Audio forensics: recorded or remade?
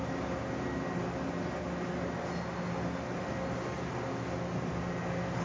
recorded